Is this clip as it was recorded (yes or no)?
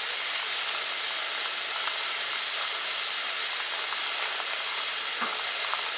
yes